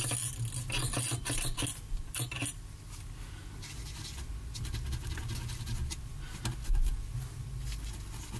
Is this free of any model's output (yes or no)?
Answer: yes